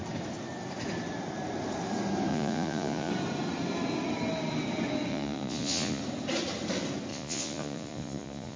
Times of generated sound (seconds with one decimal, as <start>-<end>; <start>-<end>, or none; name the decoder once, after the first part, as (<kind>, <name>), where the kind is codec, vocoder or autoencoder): 2.3-3.1 (vocoder, Vocos); 5.1-6.0; 7.1-8.6